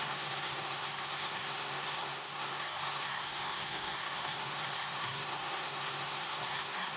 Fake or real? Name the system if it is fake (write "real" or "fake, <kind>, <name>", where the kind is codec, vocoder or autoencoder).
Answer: fake, codec, SNAC